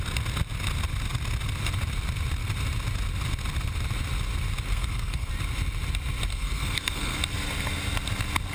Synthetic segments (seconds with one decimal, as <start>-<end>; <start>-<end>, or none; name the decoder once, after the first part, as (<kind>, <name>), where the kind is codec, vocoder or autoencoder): 4.7-5.3 (codec, SNAC); 6.3-7.2